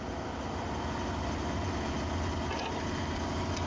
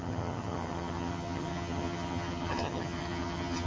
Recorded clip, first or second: first